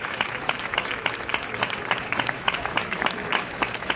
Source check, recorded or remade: remade